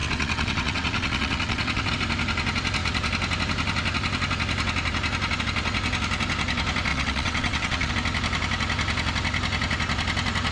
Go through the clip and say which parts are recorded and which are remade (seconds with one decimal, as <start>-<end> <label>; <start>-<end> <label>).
0.0-1.9 remade; 1.9-6.9 recorded; 6.9-7.9 remade; 7.9-10.5 recorded